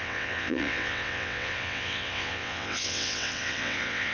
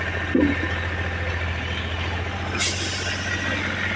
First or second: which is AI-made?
first